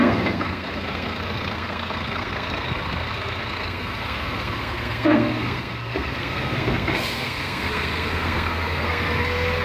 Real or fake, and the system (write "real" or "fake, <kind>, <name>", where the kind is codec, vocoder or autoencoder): fake, codec, SNAC